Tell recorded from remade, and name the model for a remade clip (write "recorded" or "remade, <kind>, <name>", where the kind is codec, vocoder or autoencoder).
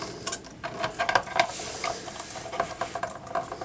recorded